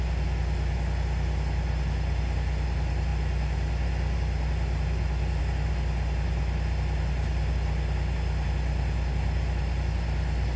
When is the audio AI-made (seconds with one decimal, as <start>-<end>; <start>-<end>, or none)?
none